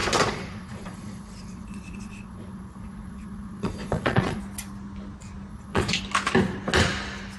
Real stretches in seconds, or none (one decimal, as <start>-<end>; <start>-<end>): 4.4-5.5; 6.0-7.4